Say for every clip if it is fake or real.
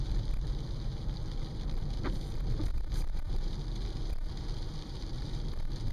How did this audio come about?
fake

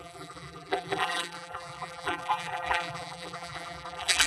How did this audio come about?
fake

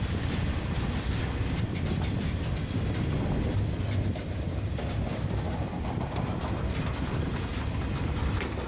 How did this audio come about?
real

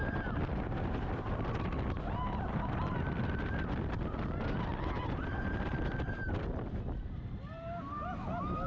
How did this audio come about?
real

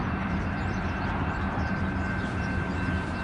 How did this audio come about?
fake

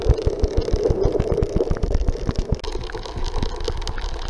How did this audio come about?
real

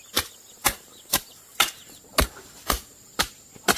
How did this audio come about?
real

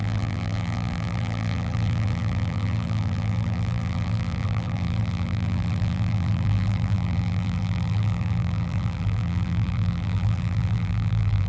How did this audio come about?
fake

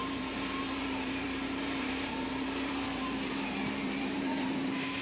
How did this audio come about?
fake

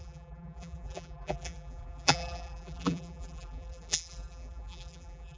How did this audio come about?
fake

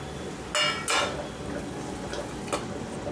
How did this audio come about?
real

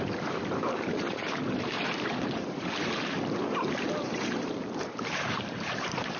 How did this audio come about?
fake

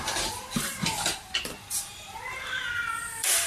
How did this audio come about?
fake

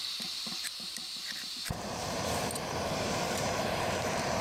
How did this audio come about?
fake